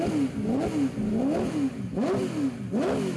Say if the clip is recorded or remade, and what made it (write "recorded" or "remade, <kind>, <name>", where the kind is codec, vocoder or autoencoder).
recorded